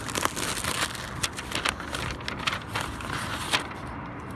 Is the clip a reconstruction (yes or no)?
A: no